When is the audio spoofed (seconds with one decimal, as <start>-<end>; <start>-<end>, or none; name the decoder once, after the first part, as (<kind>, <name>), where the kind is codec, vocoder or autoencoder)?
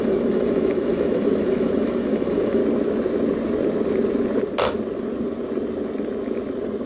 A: 0.0-2.6 (autoencoder, DAC-VAE)